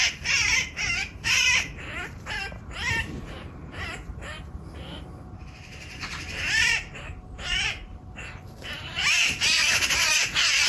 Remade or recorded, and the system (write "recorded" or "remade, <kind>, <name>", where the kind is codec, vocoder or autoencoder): remade, vocoder, BigVGAN v2